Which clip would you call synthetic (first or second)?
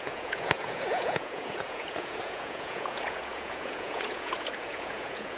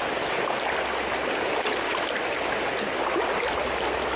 first